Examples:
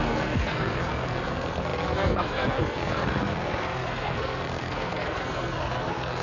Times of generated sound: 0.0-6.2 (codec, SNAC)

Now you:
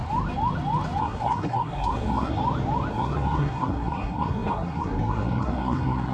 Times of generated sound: 1.0-2.4 (codec, SNAC); 2.9-6.1

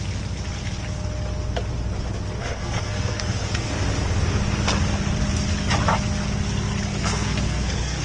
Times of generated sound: 2.4-3.7 (codec, SNAC); 6.9-8.0

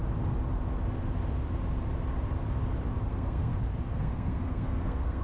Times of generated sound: 3.1-3.5 (codec, SNAC); 4.0-5.2

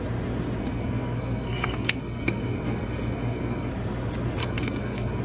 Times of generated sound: 0.6-3.7 (codec, SNAC); 4.4-5.2

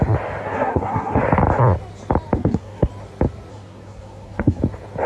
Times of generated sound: 0.4-1.2 (codec, SNAC); 2.4-2.9; 3.5-4.6

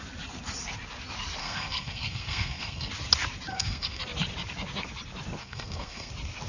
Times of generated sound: 1.4-2.9 (codec, SNAC); 3.5-4.0; 5.4-6.1